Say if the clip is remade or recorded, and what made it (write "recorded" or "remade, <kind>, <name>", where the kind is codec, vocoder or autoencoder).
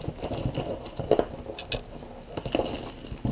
recorded